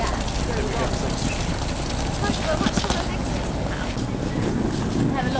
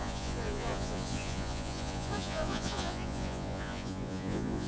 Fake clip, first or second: second